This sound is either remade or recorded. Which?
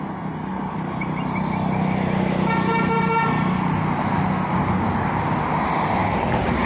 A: recorded